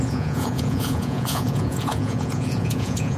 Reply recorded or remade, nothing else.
remade